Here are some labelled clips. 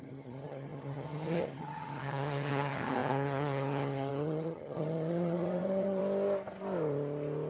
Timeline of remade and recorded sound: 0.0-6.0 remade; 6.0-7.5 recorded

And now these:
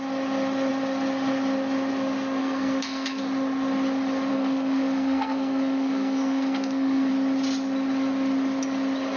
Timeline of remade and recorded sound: 0.0-2.4 recorded; 2.4-3.2 remade; 3.2-4.3 recorded; 4.3-7.1 remade; 7.1-9.2 recorded

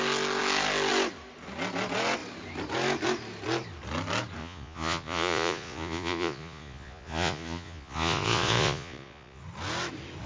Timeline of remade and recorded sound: 0.0-4.4 recorded; 4.4-9.4 remade; 9.4-10.3 recorded

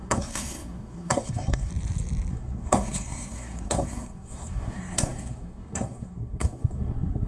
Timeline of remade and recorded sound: 0.0-1.7 remade; 1.7-2.3 recorded; 2.3-7.3 remade

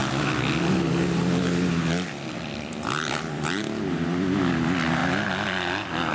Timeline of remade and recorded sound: 0.0-6.1 recorded

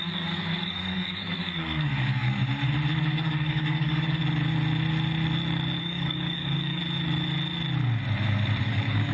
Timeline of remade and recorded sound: 0.0-2.4 remade; 2.4-3.0 recorded; 3.0-4.2 remade; 4.2-5.8 recorded; 5.8-6.8 remade; 6.8-8.6 recorded; 8.6-9.1 remade